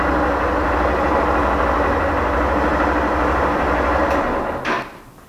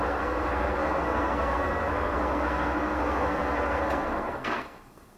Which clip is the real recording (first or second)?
first